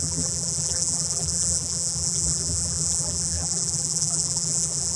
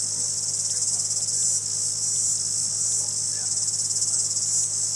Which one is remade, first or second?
first